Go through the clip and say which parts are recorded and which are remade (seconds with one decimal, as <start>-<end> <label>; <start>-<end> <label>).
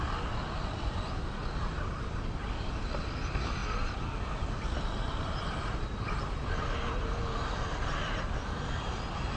0.0-9.4 recorded